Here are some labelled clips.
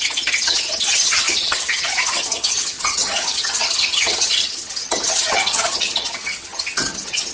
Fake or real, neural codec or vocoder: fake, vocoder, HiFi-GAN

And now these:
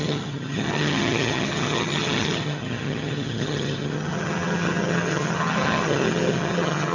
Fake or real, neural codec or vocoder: fake, vocoder, HiFi-GAN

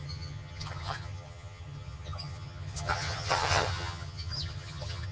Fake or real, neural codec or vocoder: fake, vocoder, HiFi-GAN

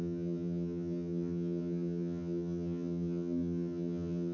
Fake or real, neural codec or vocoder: fake, vocoder, HiFi-GAN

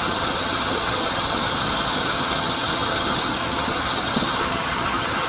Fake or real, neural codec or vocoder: fake, vocoder, HiFi-GAN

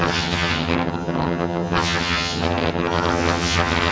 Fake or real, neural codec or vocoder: fake, vocoder, HiFi-GAN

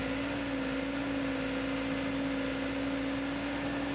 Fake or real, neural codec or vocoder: real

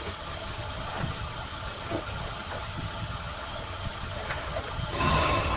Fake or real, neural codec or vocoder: fake, vocoder, HiFi-GAN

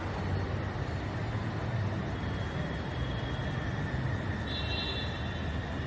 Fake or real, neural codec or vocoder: real